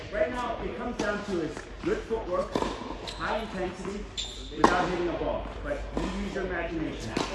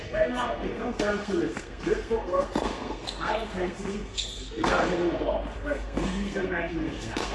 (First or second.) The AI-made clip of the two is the second